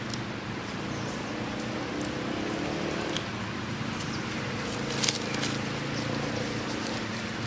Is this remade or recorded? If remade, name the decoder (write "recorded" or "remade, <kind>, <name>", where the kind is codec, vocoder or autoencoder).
recorded